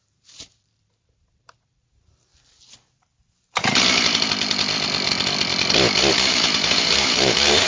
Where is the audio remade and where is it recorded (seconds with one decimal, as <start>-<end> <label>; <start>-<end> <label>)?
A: 0.0-2.3 remade; 2.3-6.1 recorded; 6.1-7.7 remade